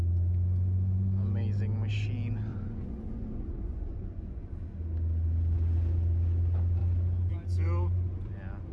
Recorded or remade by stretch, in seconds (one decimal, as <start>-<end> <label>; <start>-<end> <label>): 0.0-2.5 recorded; 2.5-4.4 remade; 4.4-8.7 recorded